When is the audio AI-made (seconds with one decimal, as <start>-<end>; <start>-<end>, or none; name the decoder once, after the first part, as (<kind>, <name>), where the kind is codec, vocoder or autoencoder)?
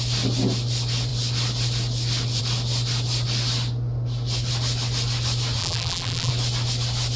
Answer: 5.6-6.3 (vocoder, BigVGAN v2)